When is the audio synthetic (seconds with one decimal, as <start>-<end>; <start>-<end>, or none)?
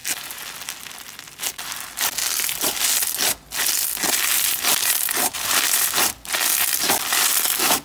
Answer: 1.3-2.2; 4.1-7.8